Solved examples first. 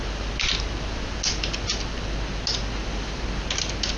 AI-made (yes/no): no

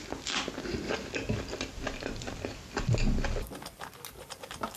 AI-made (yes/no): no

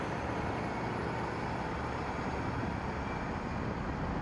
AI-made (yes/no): no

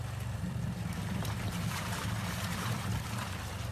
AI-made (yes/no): yes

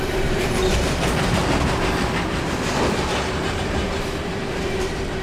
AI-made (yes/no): yes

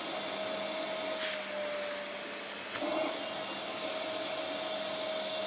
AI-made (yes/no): no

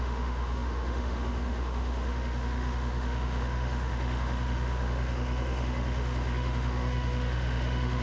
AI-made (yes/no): yes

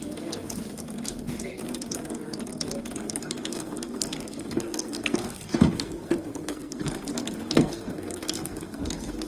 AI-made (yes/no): yes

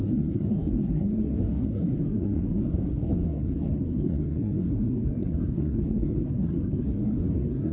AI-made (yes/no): yes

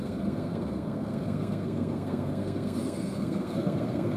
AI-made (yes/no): yes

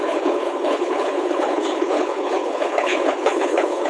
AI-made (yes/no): yes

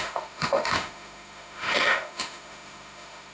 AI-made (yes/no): yes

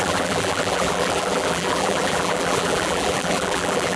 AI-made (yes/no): yes